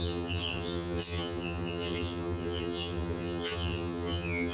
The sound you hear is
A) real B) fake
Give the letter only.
B